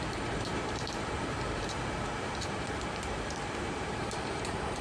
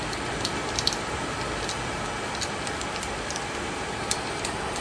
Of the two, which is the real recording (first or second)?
second